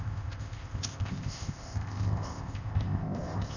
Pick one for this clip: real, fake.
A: fake